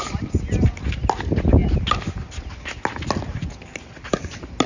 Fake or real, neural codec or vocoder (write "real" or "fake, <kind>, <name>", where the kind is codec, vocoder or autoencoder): real